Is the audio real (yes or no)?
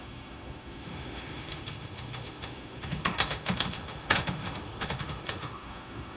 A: no